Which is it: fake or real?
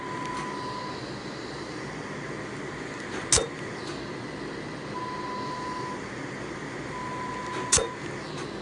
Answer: real